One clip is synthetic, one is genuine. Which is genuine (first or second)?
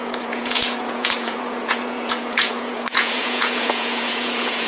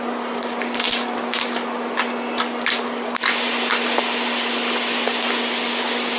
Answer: second